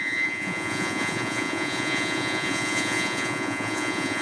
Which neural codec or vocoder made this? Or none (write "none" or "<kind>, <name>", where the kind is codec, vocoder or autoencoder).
vocoder, Vocos